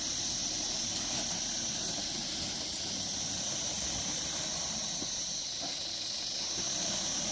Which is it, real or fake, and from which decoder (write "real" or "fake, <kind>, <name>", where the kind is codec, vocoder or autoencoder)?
fake, vocoder, BigVGAN v2